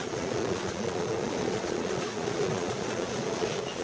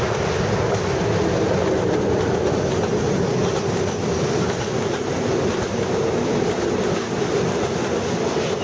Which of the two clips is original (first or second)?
second